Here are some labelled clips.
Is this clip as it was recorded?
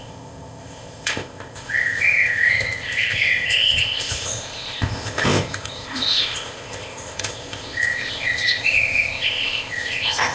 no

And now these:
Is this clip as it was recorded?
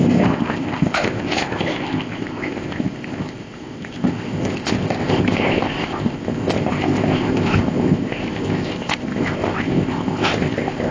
no